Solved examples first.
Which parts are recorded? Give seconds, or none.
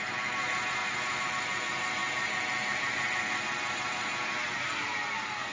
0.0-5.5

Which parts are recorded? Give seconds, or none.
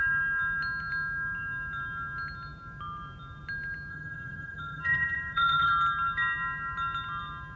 0.0-3.9; 5.7-7.6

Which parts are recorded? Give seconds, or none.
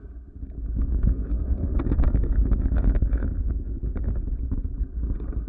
0.0-0.9; 4.2-5.5